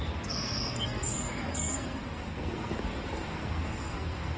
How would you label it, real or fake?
fake